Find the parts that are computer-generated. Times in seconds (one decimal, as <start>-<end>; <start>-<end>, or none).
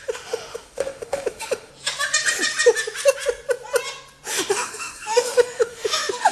0.0-1.7; 4.3-6.3